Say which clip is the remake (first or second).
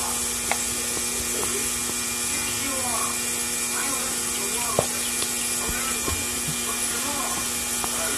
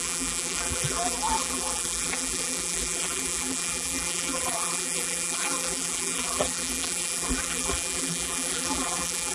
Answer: second